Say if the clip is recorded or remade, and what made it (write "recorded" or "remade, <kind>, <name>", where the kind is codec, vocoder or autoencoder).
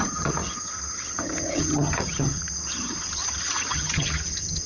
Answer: remade, vocoder, HiFi-GAN